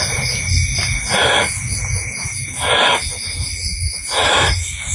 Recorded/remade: recorded